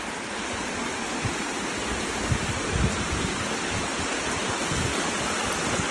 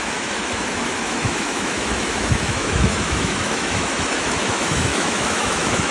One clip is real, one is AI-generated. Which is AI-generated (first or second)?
second